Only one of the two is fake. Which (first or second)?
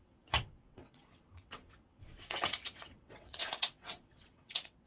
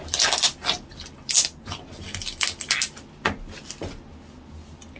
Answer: first